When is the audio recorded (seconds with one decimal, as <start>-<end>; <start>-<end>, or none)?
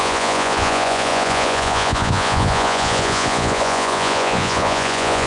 none